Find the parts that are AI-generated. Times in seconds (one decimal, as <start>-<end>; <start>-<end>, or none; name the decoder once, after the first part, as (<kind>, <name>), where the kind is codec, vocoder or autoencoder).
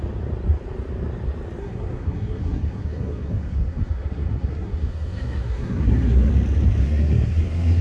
1.6-6.3 (codec, SNAC); 6.8-7.8